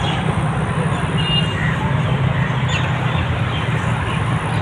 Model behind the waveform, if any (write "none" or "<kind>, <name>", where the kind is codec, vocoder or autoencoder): none